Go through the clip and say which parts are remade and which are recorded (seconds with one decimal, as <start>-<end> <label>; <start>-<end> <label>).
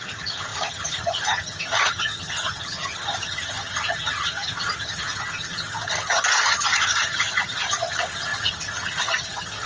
0.0-9.7 remade